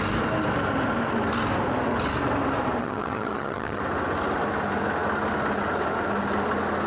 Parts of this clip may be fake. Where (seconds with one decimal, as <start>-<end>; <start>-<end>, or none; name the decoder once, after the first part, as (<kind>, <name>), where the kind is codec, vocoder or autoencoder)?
2.8-3.8 (vocoder, HiFi-GAN)